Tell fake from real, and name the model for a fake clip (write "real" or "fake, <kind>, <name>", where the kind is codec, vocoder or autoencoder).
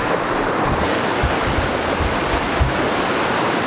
real